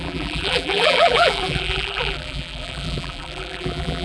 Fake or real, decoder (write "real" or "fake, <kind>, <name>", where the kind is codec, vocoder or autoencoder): fake, vocoder, BigVGAN v2